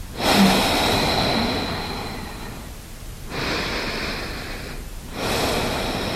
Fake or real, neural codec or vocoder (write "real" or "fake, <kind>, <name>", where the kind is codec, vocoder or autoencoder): real